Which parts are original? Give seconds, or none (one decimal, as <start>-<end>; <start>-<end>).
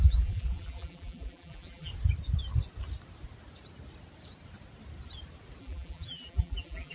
1.9-5.6